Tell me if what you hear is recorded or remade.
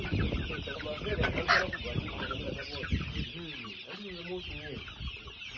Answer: recorded